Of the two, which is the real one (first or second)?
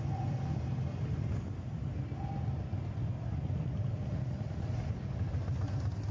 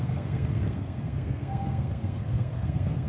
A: first